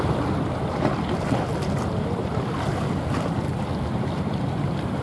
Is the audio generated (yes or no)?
yes